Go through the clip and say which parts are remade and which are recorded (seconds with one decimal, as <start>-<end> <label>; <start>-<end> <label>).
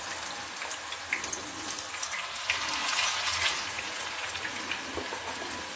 0.0-2.8 recorded; 2.8-4.6 remade; 4.6-5.8 recorded